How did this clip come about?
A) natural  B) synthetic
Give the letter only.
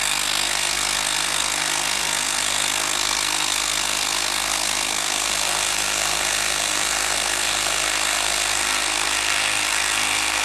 B